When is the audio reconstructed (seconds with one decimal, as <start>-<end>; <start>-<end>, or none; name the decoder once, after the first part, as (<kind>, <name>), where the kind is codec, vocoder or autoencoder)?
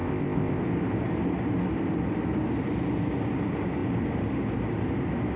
0.0-0.6 (codec, ZipCodec)